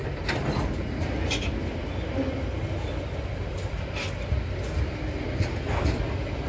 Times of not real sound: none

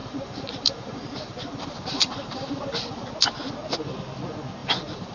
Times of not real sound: 0.0-3.1 (vocoder, BigVGAN v2); 4.6-5.1

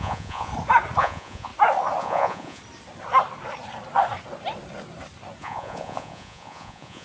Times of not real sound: 0.0-0.5 (vocoder, Vocos); 1.0-1.5; 2.0-2.6; 5.4-7.0

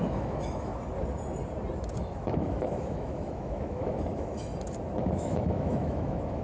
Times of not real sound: 0.0-0.7 (autoencoder, DAC-VAE); 2.0-4.5; 5.0-6.4

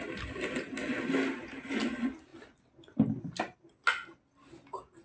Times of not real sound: none